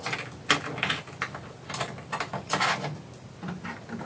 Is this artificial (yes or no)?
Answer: no